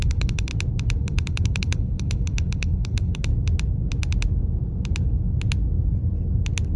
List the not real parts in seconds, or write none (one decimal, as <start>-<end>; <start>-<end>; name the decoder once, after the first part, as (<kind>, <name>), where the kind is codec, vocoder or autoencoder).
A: 0.0-0.5 (codec, HILCodec); 1.0-3.3